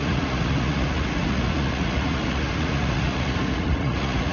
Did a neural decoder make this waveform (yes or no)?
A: yes